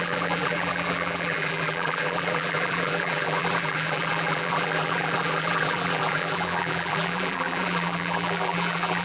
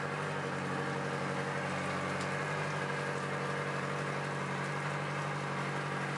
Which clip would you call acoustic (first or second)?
second